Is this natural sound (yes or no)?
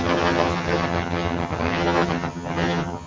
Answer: no